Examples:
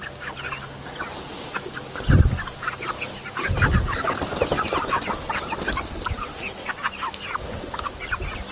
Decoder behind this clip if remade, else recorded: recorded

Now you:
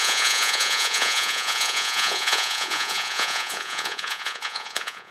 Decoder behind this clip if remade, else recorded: remade, vocoder, Vocos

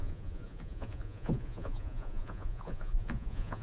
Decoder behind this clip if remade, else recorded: remade, vocoder, Vocos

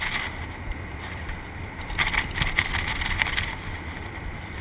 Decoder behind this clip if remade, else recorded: recorded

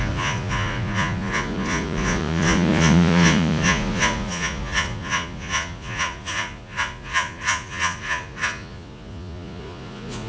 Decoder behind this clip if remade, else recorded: remade, vocoder, Vocos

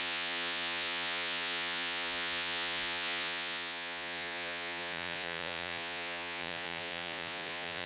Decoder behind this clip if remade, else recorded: remade, vocoder, Vocos